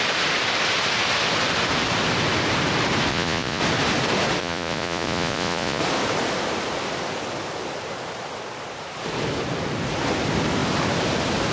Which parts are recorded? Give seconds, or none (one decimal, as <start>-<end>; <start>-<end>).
0.0-3.1; 3.6-4.4; 5.8-11.5